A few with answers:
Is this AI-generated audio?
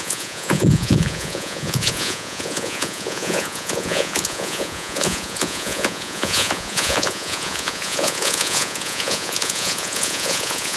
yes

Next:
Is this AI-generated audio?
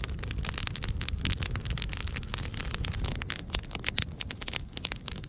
no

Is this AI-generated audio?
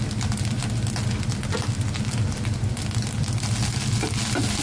no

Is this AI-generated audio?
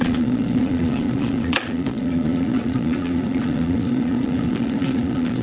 yes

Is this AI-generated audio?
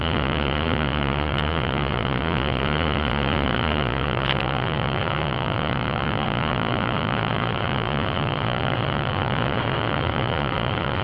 yes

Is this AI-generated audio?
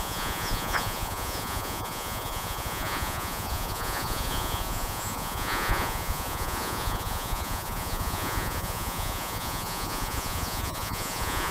yes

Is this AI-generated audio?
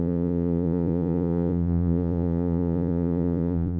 yes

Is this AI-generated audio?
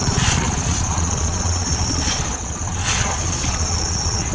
yes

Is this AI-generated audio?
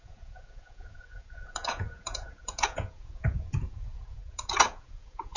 yes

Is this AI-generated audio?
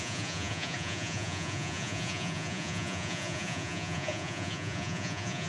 yes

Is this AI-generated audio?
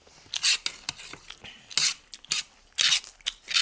no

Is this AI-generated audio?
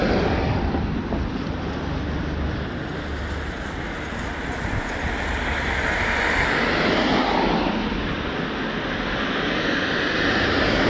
no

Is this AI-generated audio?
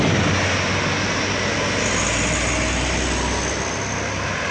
no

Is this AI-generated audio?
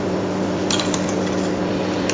no